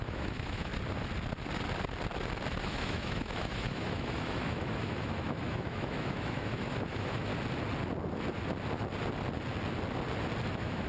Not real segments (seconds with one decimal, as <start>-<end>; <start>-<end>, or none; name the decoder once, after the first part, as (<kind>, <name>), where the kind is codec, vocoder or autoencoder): 0.0-0.7 (autoencoder, DAC-VAE); 2.6-7.3; 10.5-10.9